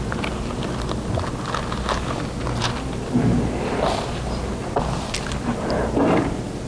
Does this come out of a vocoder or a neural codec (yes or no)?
no